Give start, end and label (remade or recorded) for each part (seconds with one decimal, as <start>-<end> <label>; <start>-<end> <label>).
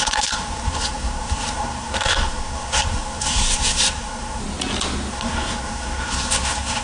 0.0-4.4 remade; 4.4-5.1 recorded; 5.1-6.8 remade